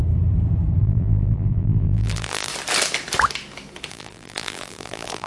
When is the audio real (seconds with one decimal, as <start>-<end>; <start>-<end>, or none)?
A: 0.0-0.8; 2.5-3.9